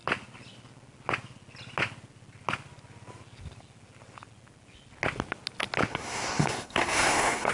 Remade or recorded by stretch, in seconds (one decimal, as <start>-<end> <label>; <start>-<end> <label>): 0.0-5.9 recorded; 5.9-7.5 remade